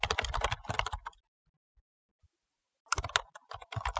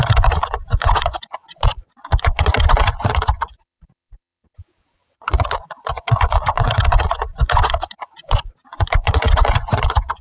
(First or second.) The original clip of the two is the first